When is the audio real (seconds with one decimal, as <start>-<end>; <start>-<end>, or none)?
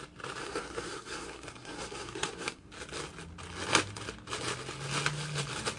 0.0-0.4; 2.7-5.8